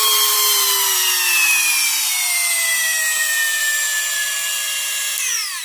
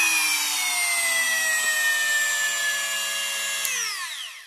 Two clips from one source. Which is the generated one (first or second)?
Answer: first